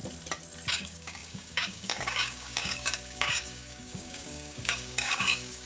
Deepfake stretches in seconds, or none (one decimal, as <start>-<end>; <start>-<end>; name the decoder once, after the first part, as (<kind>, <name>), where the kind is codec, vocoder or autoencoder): 0.7-5.7 (codec, DAC)